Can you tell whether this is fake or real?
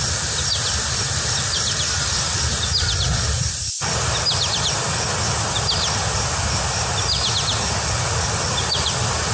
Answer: real